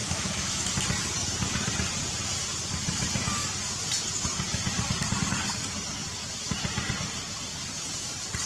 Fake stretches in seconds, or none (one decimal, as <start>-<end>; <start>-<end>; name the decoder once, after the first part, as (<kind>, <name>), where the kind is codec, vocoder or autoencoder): 0.0-0.7 (autoencoder, DAC-VAE)

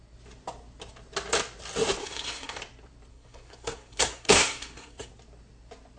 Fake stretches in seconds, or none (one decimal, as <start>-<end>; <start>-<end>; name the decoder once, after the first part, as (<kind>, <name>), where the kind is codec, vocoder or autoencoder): 2.0-2.6 (codec, SNAC); 3.1-5.1

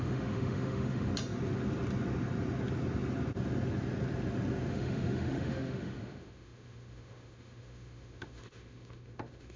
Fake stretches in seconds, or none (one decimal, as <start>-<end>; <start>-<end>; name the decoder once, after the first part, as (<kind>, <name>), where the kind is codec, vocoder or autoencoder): 0.0-1.1 (autoencoder, DAC-VAE); 4.7-9.6

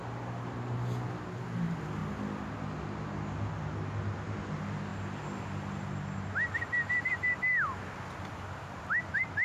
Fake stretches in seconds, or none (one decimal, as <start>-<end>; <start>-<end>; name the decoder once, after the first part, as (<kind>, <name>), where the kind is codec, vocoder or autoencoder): none

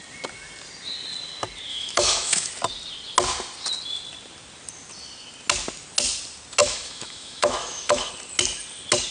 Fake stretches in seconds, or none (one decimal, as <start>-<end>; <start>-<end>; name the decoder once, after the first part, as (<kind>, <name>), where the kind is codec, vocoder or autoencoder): 1.7-2.5 (autoencoder, DAC-VAE); 6.6-8.1